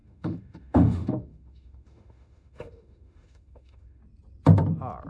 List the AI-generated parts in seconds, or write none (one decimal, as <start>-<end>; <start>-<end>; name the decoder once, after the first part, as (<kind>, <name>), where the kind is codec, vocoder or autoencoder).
0.0-4.0 (autoencoder, DAC-VAE)